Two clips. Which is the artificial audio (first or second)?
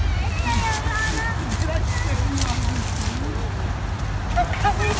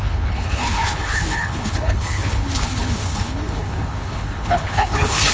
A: second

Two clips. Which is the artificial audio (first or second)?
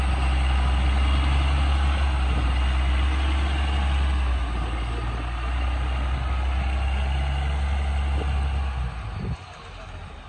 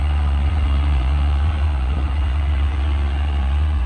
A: second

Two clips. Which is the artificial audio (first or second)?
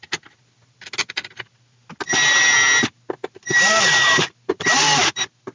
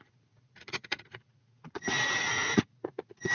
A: second